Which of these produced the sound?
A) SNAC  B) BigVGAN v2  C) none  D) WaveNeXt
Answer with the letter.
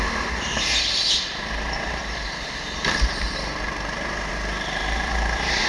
B